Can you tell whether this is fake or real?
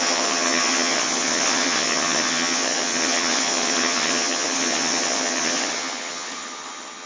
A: fake